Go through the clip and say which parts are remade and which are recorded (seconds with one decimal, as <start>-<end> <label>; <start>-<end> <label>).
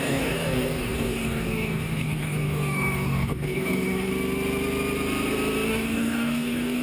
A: 0.0-4.1 remade; 4.1-5.7 recorded; 5.7-6.8 remade